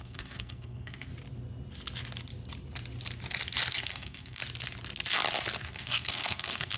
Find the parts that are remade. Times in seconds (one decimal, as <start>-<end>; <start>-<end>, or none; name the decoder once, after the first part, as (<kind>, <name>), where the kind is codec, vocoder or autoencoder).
0.0-1.1 (codec, SNAC); 3.7-4.4; 5.6-6.8